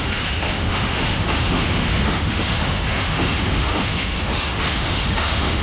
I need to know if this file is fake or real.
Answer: fake